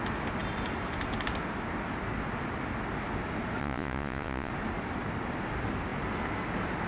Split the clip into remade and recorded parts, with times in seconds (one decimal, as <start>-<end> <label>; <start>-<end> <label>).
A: 0.0-3.6 recorded; 3.6-4.5 remade; 4.5-6.9 recorded